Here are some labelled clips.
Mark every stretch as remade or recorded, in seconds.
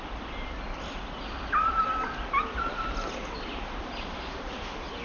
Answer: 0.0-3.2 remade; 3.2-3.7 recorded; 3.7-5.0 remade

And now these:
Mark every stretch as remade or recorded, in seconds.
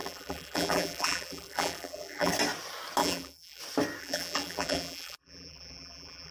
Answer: 0.0-2.3 remade; 2.3-3.0 recorded; 3.0-3.6 remade; 3.6-4.0 recorded; 4.0-6.3 remade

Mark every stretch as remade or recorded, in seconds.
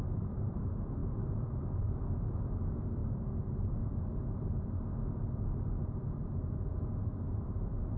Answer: 0.0-1.0 recorded; 1.0-1.7 remade; 1.7-8.0 recorded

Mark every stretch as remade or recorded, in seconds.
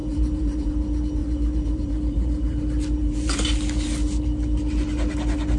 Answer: 0.0-0.7 remade; 0.7-1.2 recorded; 1.2-2.6 remade; 2.6-3.0 recorded; 3.0-3.6 remade; 3.6-5.6 recorded